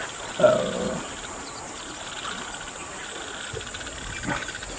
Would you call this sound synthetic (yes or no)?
no